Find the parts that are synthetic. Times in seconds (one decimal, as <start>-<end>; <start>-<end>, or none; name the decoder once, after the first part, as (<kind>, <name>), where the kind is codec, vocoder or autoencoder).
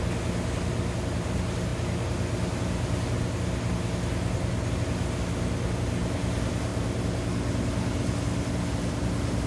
none